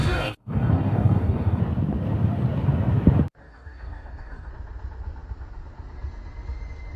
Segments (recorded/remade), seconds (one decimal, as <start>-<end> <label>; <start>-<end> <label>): 0.0-1.6 remade; 1.6-3.4 recorded; 3.4-4.5 remade; 4.5-7.0 recorded